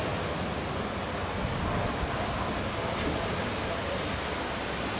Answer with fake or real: real